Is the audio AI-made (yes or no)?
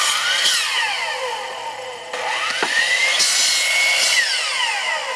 no